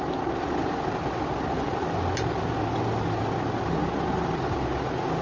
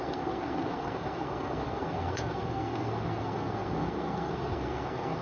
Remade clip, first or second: second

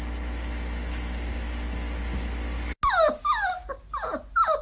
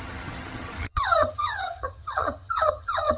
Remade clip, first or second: second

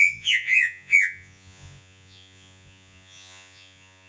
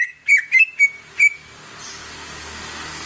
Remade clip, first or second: first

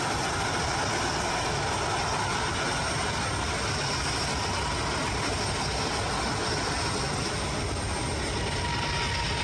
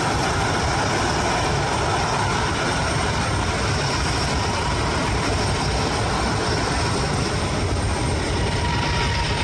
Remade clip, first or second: second